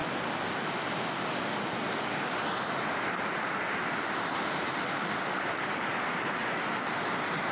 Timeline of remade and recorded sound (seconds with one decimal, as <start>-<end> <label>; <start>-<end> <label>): 0.0-7.5 recorded